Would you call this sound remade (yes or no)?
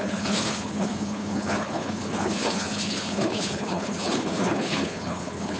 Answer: yes